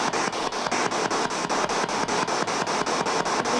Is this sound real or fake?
real